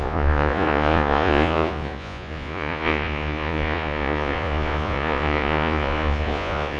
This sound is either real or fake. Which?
fake